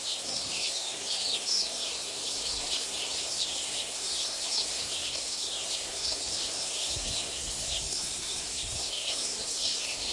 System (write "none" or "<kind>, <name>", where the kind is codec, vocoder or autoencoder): codec, SNAC